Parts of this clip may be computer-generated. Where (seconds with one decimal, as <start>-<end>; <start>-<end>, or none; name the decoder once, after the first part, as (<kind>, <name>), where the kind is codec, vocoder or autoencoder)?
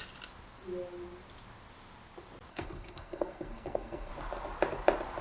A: 2.5-4.1 (codec, SNAC)